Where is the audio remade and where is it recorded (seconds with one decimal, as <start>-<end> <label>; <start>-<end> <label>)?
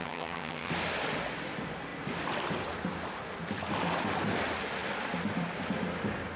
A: 0.0-0.7 remade; 0.7-6.4 recorded